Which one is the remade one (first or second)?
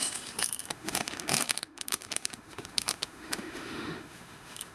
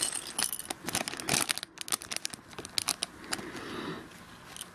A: first